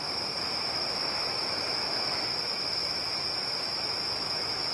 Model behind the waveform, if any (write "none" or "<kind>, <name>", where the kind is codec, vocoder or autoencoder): autoencoder, DAC-VAE